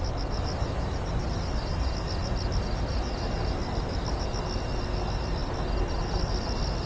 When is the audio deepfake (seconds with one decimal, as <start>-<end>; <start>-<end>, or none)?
none

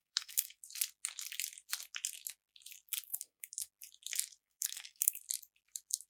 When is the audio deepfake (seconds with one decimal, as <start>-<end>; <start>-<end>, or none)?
0.0-0.6; 3.1-3.7; 4.4-5.2